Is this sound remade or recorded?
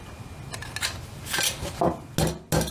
recorded